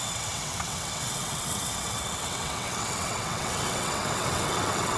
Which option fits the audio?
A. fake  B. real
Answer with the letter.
A